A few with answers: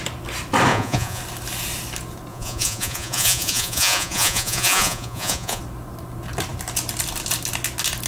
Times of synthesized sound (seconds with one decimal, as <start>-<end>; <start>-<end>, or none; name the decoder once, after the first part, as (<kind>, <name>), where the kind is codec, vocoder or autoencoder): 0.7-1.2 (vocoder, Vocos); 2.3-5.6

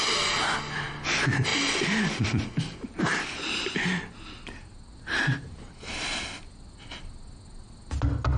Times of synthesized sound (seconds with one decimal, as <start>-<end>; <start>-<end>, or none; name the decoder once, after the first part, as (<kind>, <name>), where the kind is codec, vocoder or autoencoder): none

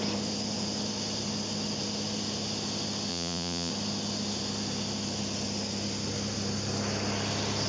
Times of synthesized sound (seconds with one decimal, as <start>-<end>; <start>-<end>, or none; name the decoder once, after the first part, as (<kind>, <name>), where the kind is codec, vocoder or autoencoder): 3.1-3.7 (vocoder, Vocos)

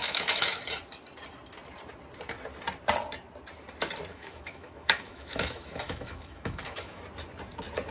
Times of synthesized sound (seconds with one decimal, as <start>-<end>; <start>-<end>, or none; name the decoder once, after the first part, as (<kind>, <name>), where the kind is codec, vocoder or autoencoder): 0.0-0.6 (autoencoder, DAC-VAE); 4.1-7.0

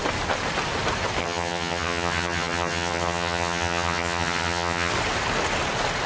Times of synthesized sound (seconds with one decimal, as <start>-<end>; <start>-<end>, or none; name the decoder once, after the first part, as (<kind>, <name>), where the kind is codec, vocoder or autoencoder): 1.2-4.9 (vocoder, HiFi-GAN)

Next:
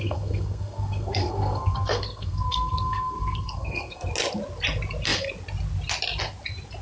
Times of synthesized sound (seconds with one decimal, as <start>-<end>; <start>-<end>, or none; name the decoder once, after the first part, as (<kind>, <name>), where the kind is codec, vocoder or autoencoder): 0.0-4.1 (codec, SNAC)

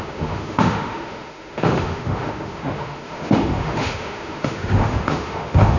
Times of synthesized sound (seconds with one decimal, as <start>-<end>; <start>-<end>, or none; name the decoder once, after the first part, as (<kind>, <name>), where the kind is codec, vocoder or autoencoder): 0.0-5.8 (autoencoder, DAC-VAE)

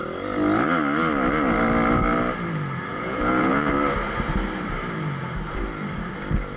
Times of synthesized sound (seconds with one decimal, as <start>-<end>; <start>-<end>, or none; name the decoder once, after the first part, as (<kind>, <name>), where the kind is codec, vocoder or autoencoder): 2.9-3.7 (vocoder, Vocos)